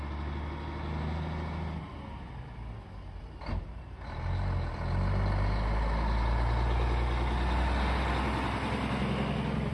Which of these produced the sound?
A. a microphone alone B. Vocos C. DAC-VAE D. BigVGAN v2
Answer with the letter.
A